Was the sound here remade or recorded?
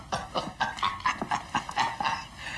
recorded